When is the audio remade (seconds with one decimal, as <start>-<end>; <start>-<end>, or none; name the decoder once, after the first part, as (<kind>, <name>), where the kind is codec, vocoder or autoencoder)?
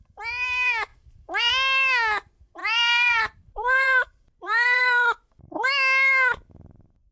0.9-1.5 (vocoder, BigVGAN v2); 2.6-5.5